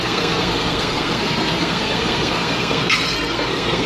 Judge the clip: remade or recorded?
remade